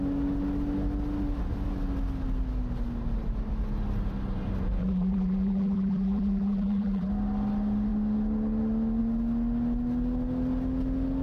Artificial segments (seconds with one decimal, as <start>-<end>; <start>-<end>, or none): 4.8-7.1